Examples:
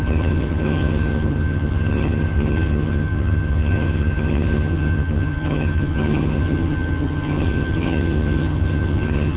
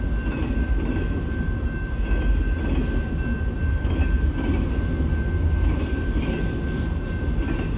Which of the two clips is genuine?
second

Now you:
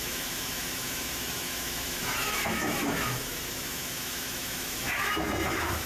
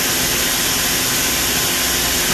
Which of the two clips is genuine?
second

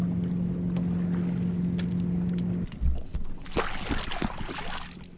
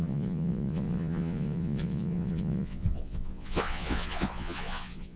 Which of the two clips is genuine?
first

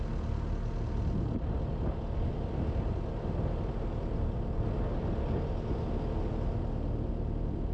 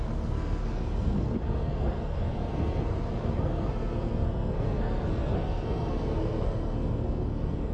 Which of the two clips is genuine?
first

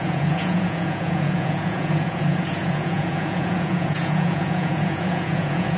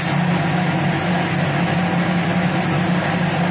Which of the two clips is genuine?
second